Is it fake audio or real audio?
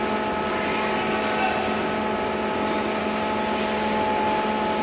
real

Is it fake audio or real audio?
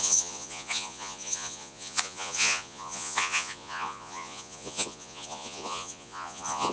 fake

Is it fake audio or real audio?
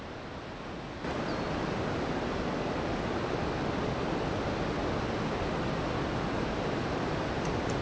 real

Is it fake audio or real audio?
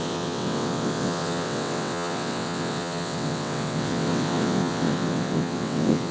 fake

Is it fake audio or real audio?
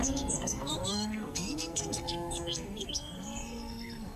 fake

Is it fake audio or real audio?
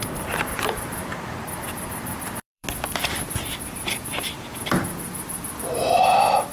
fake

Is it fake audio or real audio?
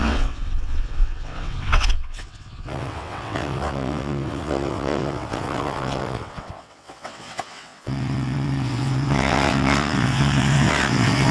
fake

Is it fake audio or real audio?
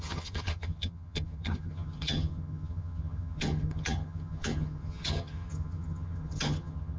fake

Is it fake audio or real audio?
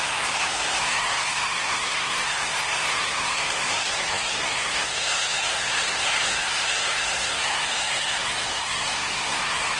fake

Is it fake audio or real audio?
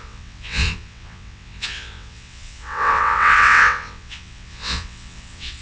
fake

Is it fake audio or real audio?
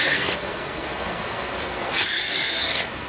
fake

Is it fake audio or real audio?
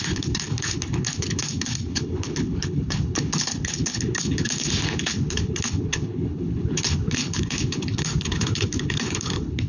fake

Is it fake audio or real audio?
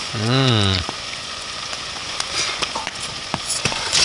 fake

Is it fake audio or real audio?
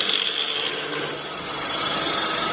real